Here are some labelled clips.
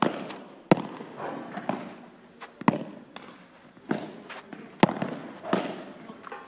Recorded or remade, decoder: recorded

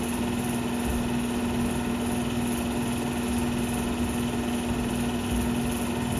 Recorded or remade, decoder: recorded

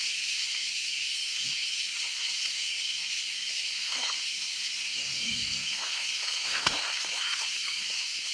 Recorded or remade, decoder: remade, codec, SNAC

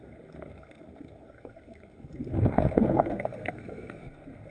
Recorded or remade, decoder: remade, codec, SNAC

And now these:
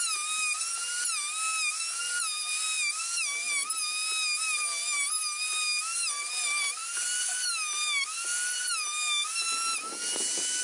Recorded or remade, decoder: recorded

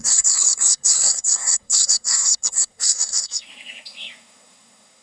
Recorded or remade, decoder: remade, codec, SNAC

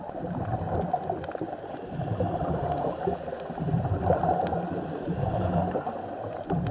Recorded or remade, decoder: recorded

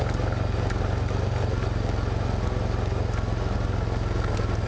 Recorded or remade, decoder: recorded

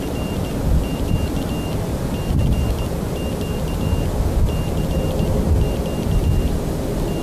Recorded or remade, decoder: recorded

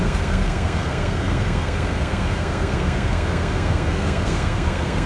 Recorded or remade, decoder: remade, codec, SNAC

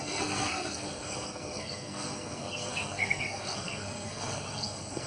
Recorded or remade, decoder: remade, codec, SNAC